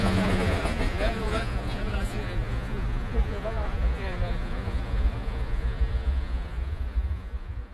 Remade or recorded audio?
remade